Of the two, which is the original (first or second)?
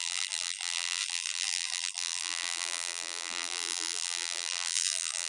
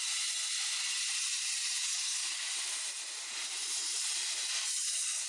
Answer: second